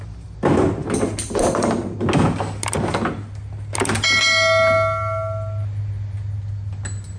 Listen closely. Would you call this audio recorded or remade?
recorded